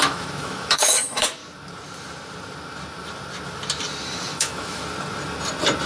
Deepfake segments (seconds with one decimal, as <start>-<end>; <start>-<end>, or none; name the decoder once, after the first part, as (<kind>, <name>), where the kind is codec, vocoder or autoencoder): 0.0-1.4 (autoencoder, DAC-VAE); 4.3-4.8